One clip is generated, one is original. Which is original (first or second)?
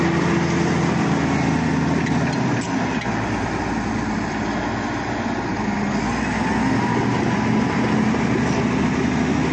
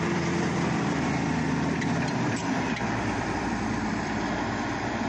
first